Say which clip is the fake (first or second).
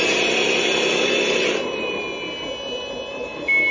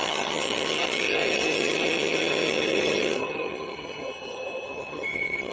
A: second